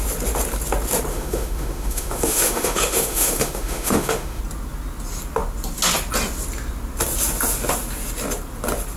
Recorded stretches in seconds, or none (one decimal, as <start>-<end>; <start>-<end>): 0.0-1.1; 4.4-9.0

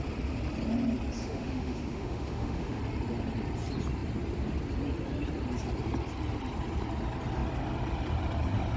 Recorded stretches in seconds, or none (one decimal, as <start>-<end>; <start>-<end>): 0.0-1.2; 2.8-8.8